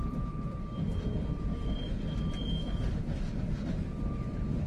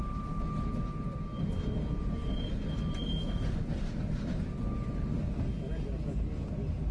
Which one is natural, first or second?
second